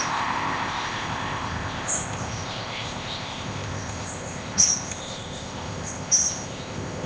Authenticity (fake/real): fake